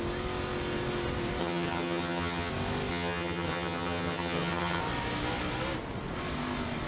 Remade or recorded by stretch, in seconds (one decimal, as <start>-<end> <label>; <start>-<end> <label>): 0.0-1.4 recorded; 1.4-2.5 remade; 2.5-2.9 recorded; 2.9-4.8 remade; 4.8-6.9 recorded